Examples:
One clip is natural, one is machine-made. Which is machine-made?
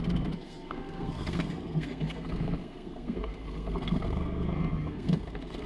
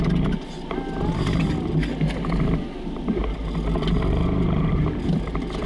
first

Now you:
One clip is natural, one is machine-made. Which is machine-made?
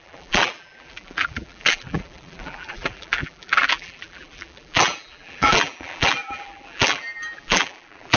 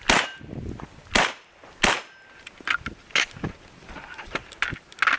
first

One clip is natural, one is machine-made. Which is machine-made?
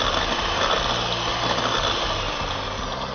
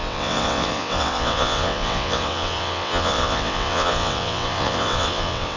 second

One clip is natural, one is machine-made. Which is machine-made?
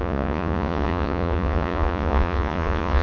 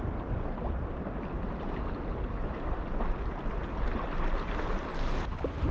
first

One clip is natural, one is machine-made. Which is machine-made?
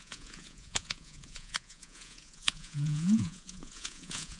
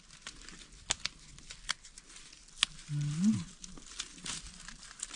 first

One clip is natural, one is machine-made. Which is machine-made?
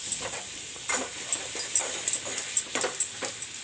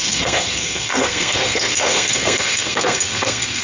second